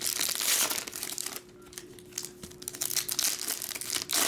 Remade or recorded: recorded